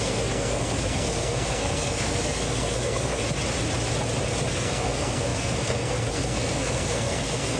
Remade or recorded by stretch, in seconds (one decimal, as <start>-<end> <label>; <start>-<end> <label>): 0.0-3.2 remade; 3.2-4.5 recorded; 4.5-7.6 remade